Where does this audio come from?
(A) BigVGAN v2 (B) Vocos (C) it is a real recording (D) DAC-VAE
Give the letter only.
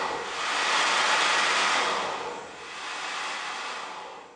C